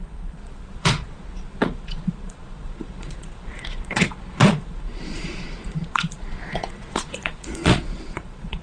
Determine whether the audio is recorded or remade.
remade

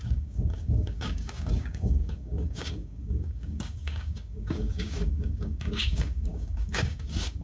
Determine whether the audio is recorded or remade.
remade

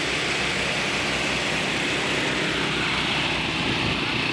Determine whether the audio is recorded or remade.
recorded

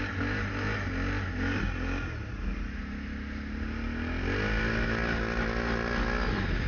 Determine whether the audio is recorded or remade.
recorded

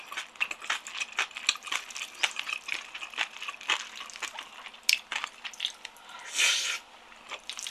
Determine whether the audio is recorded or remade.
recorded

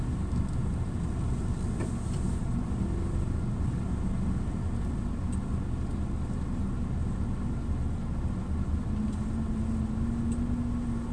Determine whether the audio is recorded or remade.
recorded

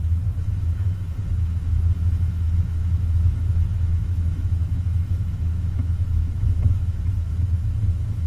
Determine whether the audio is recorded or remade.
remade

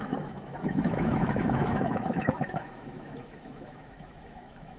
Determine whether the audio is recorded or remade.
remade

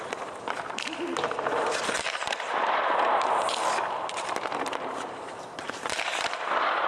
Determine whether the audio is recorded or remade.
remade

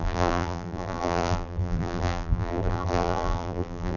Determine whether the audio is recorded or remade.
remade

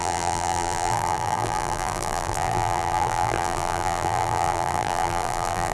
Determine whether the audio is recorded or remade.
remade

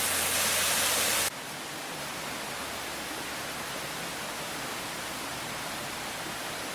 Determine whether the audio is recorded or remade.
recorded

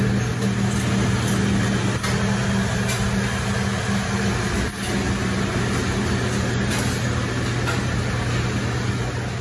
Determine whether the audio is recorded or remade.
recorded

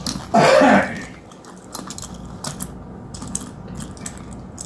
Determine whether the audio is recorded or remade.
recorded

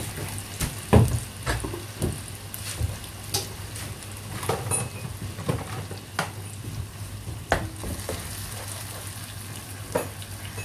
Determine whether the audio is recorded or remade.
recorded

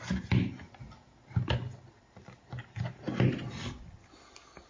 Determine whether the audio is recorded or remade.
recorded